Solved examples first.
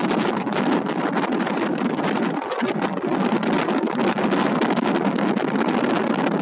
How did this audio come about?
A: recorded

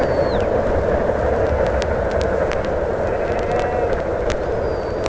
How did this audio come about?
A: recorded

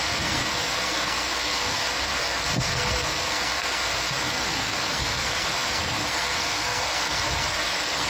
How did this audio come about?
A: remade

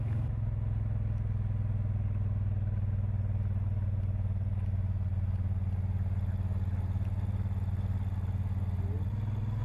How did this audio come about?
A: recorded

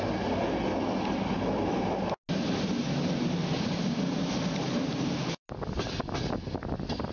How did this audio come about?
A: recorded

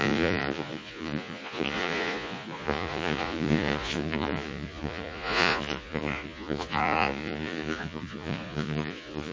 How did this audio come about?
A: remade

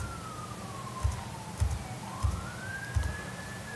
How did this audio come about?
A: recorded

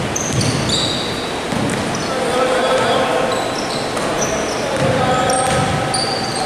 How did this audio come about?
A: recorded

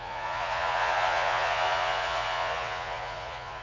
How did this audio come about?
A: remade